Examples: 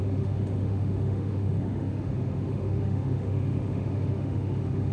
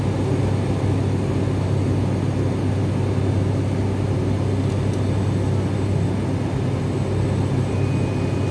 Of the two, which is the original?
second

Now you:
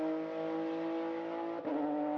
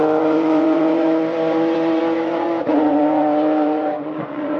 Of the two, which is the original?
first